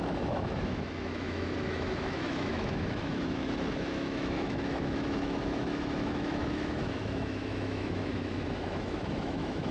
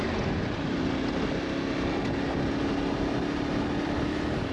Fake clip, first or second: first